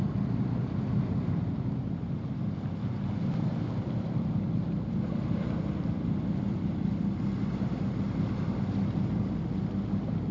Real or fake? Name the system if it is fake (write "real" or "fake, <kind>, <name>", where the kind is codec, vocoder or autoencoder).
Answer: real